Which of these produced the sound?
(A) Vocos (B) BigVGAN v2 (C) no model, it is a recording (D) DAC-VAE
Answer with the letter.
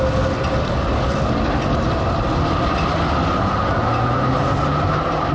C